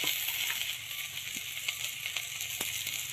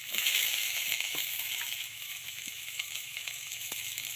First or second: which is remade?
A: second